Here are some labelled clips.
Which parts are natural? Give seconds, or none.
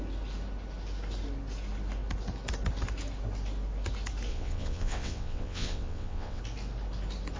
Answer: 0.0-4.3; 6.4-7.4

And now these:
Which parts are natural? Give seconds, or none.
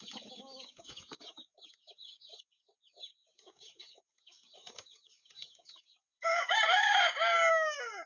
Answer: none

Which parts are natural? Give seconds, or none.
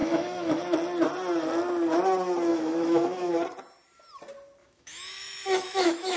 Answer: 0.6-2.5; 3.3-4.6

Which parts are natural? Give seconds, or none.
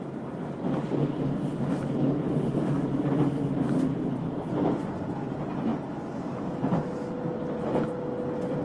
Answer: 0.0-8.6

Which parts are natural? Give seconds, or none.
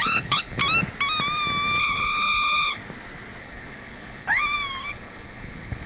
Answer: 0.6-1.8; 2.8-3.4; 4.4-4.9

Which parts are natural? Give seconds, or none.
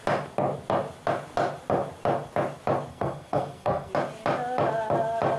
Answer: 0.0-2.9; 3.9-5.4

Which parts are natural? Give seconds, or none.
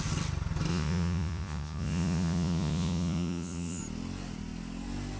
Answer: 0.0-0.7; 3.8-5.2